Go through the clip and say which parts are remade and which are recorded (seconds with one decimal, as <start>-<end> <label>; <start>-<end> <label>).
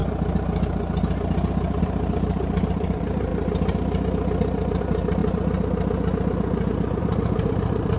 0.0-1.8 recorded; 1.8-3.3 remade; 3.3-4.8 recorded; 4.8-5.2 remade; 5.2-7.0 recorded; 7.0-8.0 remade